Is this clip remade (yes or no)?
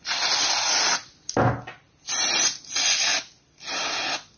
no